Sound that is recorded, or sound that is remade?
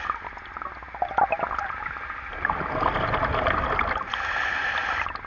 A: recorded